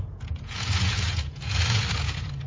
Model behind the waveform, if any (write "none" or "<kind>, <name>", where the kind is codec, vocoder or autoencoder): vocoder, Vocos